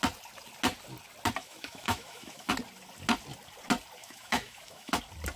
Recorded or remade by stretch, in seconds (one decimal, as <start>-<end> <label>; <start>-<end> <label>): 0.0-1.4 recorded; 1.4-2.5 remade; 2.5-4.0 recorded; 4.0-5.0 remade; 5.0-5.4 recorded